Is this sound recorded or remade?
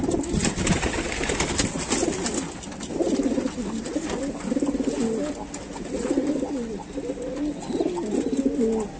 recorded